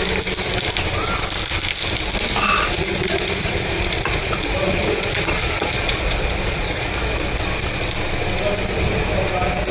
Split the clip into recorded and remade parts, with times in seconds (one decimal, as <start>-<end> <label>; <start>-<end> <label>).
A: 0.0-2.5 recorded; 2.5-6.9 remade; 6.9-9.7 recorded